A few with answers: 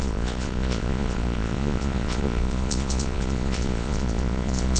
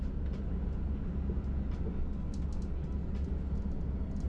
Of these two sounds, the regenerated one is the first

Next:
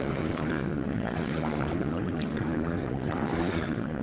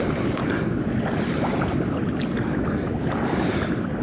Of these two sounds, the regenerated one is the first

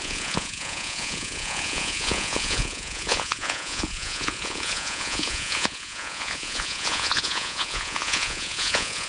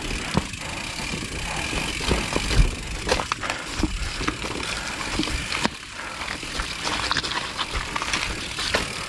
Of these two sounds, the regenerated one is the first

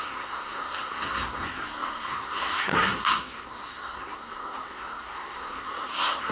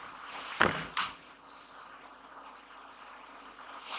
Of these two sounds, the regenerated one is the first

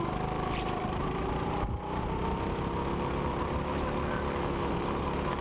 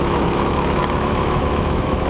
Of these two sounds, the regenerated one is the second